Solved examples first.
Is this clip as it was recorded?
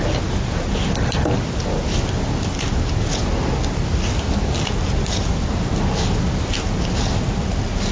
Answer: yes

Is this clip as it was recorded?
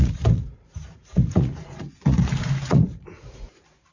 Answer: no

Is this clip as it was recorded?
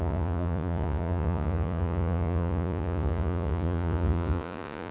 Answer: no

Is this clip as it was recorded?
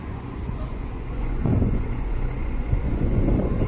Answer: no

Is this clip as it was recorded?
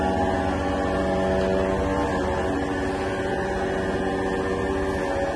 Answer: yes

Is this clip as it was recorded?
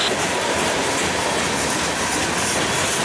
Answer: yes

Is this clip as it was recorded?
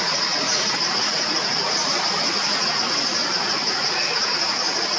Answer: no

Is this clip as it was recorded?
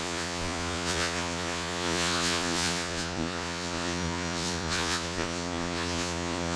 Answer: no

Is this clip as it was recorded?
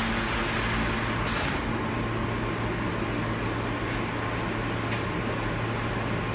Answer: yes